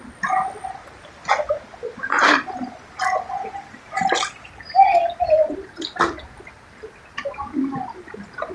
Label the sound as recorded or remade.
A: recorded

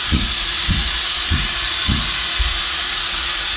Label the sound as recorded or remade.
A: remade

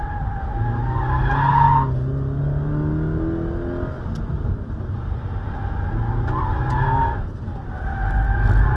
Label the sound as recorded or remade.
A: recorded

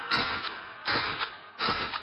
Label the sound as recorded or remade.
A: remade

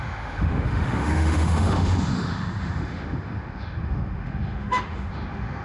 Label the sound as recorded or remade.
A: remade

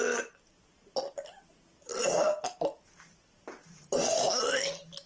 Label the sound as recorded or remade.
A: recorded